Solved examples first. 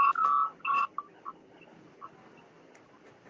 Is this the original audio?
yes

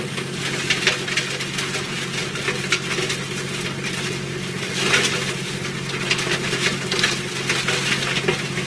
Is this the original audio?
yes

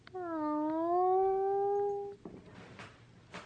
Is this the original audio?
yes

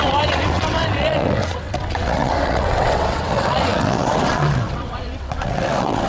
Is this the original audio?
no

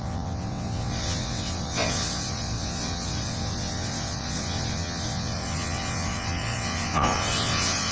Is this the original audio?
no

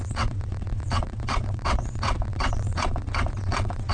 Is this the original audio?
no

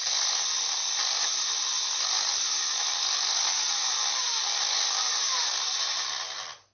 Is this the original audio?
yes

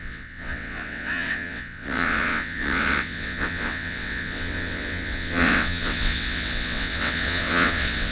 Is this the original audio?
no